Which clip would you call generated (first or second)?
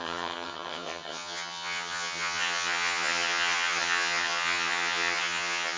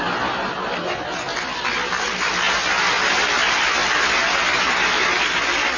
first